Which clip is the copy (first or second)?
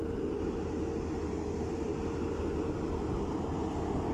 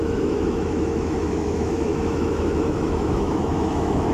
second